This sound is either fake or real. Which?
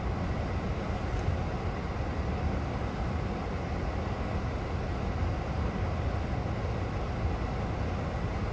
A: real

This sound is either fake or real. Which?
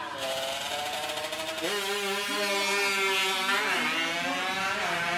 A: real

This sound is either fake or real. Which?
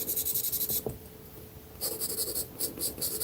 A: real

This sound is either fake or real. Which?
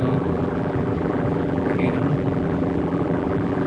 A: fake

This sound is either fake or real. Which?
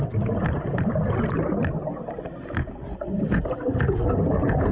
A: real